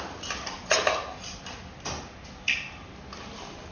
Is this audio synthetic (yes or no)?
no